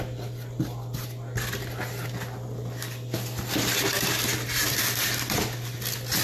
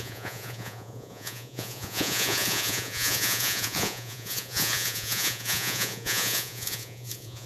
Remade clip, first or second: second